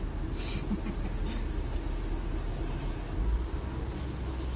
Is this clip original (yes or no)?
yes